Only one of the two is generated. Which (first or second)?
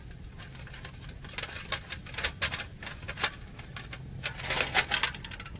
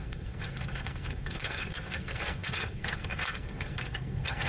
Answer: second